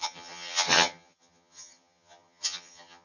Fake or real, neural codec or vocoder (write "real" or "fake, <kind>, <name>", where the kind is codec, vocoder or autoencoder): fake, vocoder, HiFi-GAN